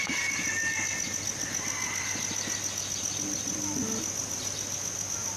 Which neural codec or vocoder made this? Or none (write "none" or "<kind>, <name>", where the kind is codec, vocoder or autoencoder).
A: none